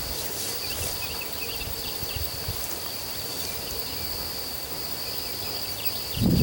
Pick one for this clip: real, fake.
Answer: fake